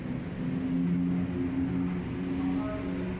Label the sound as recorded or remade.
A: recorded